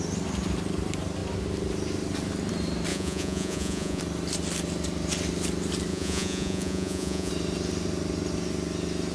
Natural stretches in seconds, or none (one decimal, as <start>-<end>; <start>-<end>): 0.0-2.9; 4.0-5.9; 7.3-9.1